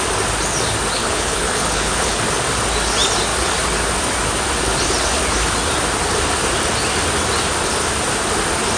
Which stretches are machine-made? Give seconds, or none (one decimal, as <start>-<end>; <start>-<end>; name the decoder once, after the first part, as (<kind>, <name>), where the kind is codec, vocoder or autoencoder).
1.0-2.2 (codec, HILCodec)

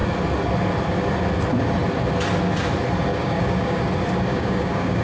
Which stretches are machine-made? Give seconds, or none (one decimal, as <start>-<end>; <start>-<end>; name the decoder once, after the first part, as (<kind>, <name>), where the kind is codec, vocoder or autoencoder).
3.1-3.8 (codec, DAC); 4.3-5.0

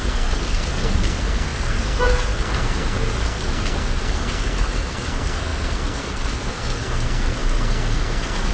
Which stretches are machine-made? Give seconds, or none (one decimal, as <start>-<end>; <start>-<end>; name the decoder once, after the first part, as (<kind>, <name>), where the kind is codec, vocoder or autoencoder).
0.0-8.5 (codec, SNAC)

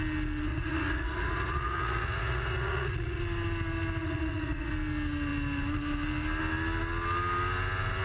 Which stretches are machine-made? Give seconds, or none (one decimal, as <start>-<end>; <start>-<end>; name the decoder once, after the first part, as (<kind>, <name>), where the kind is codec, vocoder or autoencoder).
0.5-3.2 (vocoder, Vocos); 4.0-4.7

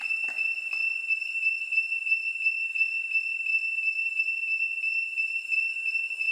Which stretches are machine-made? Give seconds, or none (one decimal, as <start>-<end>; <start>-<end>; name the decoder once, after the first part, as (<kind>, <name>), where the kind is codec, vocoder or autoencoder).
3.5-4.2 (vocoder, BigVGAN v2)

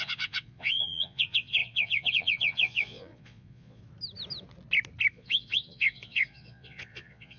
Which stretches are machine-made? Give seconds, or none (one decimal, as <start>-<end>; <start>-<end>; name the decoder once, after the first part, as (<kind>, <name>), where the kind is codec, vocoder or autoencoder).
0.0-3.8 (vocoder, Vocos); 5.1-7.4

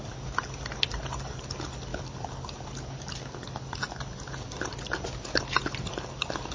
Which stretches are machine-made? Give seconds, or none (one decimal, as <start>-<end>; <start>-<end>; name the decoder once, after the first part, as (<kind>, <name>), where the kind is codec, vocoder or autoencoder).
none